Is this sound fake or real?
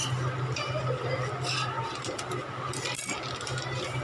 real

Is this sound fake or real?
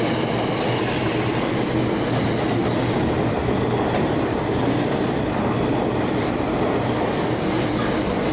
real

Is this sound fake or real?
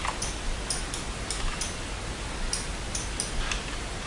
real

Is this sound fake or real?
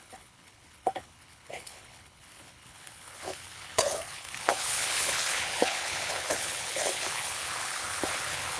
fake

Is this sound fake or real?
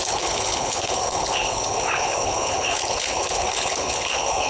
fake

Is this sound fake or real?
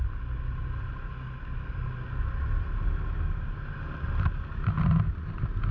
real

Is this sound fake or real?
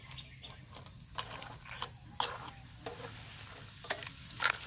real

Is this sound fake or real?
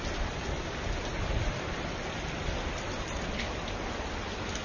real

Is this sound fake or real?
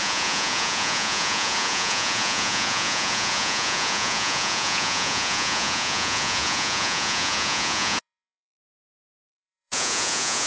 fake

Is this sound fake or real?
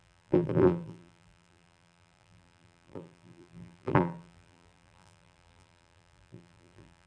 fake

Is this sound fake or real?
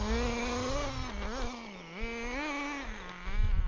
real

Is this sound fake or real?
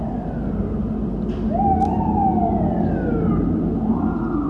real